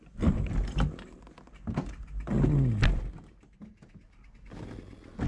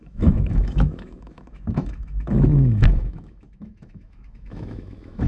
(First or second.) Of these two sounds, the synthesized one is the second